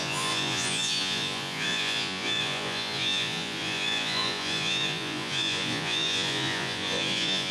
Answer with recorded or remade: remade